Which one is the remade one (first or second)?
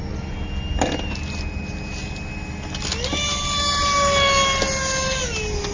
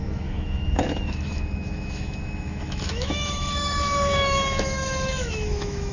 second